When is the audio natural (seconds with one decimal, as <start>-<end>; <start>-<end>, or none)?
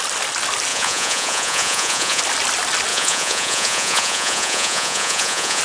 0.0-0.7; 2.2-2.9